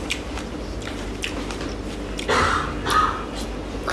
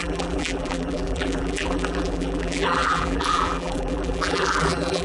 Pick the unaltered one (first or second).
first